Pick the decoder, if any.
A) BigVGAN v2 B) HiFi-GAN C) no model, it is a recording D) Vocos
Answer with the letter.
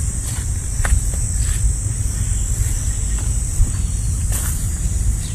C